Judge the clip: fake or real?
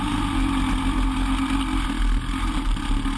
real